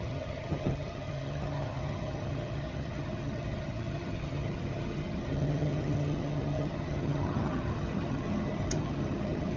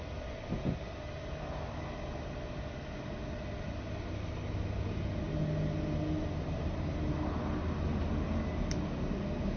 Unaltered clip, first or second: second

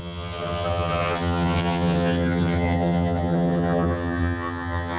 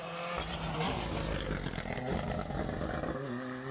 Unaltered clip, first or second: second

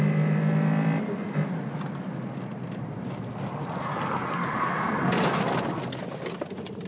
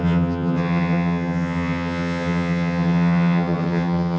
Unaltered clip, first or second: first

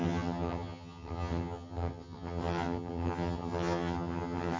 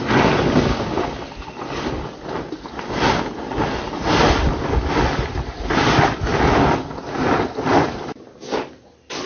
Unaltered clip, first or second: second